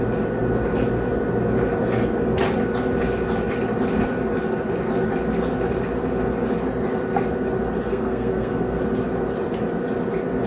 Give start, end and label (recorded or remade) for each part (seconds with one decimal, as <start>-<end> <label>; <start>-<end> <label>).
0.0-7.9 recorded; 7.9-8.8 remade; 8.8-10.5 recorded